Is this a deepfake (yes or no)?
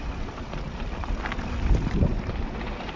no